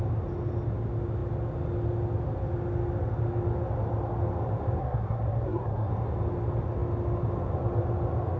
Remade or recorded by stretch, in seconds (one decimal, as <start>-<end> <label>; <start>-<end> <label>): 0.0-4.8 recorded; 4.8-5.9 remade; 5.9-8.4 recorded